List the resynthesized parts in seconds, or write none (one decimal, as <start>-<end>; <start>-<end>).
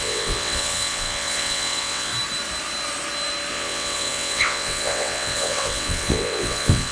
0.0-2.1; 3.5-6.9